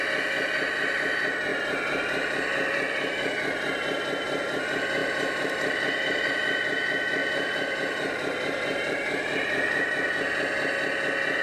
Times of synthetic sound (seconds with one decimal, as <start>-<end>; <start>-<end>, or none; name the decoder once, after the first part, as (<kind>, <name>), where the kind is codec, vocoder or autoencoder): 1.5-4.6 (vocoder, BigVGAN v2); 5.0-6.3; 7.2-9.9

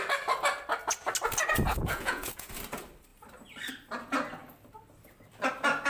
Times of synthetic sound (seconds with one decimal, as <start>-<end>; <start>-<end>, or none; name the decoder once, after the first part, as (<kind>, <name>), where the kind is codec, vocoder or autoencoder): 1.7-2.5 (vocoder, Vocos)

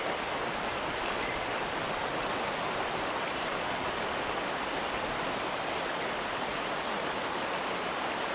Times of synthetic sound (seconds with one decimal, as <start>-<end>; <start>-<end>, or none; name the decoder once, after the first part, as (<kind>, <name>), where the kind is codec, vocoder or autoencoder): 6.5-7.0 (vocoder, Vocos)

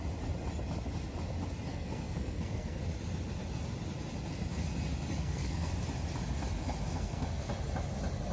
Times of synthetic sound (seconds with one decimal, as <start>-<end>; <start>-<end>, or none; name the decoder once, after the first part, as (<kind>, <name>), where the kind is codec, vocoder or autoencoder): 1.7-2.8 (codec, SNAC); 5.2-5.7; 6.9-7.5

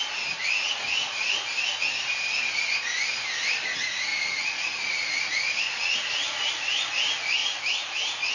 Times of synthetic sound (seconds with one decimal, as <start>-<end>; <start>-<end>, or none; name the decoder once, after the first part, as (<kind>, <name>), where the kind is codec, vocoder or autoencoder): 0.4-1.5 (vocoder, Vocos); 4.1-6.5; 7.4-8.3

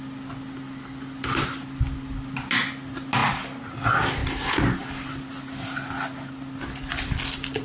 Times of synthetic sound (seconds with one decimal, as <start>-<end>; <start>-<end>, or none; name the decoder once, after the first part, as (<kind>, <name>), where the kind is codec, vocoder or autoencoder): none